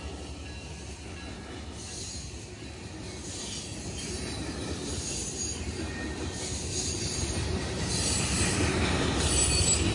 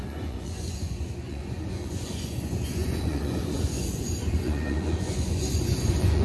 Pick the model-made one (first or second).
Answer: second